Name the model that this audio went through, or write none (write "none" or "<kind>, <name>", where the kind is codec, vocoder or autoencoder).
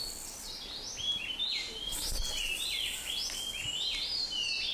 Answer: none